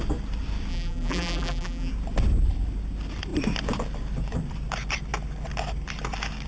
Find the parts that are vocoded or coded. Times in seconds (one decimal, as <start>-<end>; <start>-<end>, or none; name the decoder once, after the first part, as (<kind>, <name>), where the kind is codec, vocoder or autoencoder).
0.7-1.9 (vocoder, BigVGAN v2)